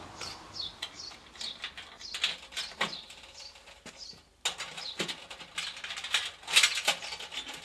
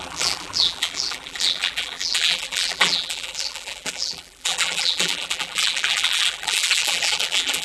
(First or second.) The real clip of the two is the first